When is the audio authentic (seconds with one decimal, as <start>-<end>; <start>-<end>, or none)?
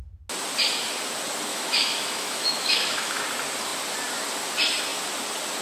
0.0-1.5; 3.2-5.6